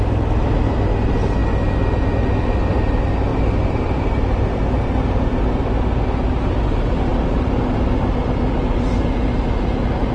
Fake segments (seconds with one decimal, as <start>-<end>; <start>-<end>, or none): 3.3-4.6; 7.1-8.3